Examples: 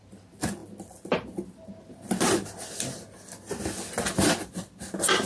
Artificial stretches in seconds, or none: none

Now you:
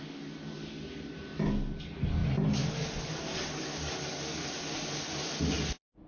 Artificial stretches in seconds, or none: none

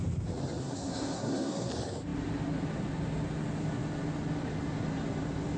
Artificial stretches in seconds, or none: 0.6-1.7 (codec, SNAC)

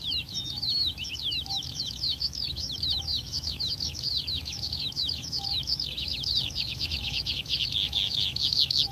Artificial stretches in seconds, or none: 0.0-8.9 (autoencoder, DAC-VAE)

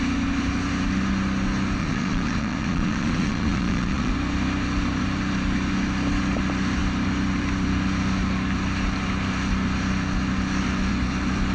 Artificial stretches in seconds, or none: 1.8-4.1 (vocoder, Vocos)

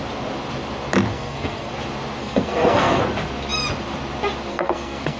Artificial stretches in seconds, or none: 1.1-1.7 (codec, SNAC); 2.2-3.0; 4.5-5.2

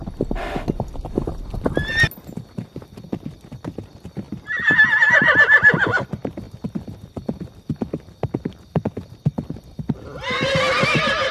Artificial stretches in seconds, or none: 2.7-3.3 (vocoder, BigVGAN v2)